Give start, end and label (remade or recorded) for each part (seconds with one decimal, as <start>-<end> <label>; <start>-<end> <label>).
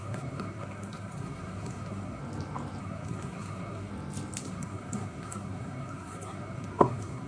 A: 0.0-2.2 remade; 2.2-2.8 recorded; 2.8-3.9 remade; 3.9-4.4 recorded; 4.4-7.3 remade